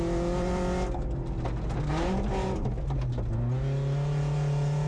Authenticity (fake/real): real